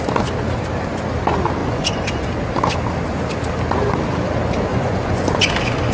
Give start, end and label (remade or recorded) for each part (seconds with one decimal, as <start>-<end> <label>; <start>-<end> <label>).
0.0-1.6 recorded; 1.6-2.3 remade; 2.3-4.7 recorded; 4.7-5.5 remade; 5.5-5.9 recorded

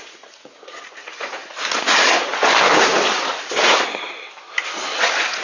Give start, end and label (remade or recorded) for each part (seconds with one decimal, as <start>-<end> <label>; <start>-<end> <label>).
0.0-2.3 remade; 2.3-5.0 recorded; 5.0-5.4 remade

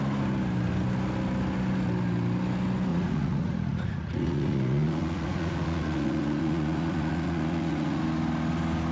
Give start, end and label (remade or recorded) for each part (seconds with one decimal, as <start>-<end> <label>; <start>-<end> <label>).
0.0-2.9 recorded; 2.9-8.0 remade; 8.0-8.9 recorded

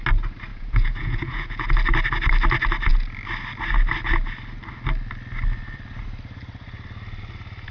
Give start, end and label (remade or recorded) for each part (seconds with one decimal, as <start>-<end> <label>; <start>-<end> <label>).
0.0-0.5 recorded; 0.5-1.7 remade; 1.7-7.7 recorded

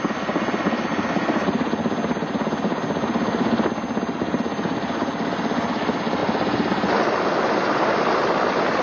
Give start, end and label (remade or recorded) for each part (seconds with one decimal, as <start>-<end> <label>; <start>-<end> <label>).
0.0-8.8 recorded

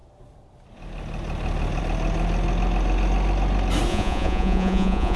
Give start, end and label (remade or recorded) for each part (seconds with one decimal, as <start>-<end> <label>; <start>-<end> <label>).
0.0-3.9 recorded; 3.9-5.2 remade